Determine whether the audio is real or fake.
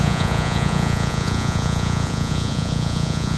fake